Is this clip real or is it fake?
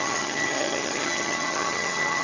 fake